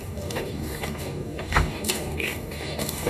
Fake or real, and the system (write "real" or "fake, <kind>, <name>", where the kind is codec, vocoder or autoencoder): fake, codec, DAC